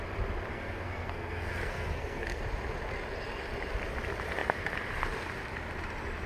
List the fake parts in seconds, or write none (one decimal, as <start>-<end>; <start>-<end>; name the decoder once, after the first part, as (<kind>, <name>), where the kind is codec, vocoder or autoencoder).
0.5-2.4 (codec, SNAC)